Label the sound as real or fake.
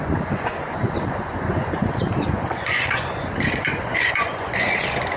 fake